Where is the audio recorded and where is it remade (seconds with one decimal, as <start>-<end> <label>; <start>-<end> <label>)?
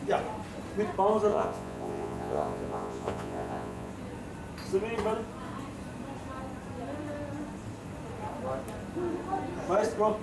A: 0.0-1.3 recorded; 1.3-3.9 remade; 3.9-10.2 recorded